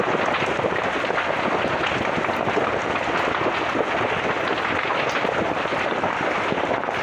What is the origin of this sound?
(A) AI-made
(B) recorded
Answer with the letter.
B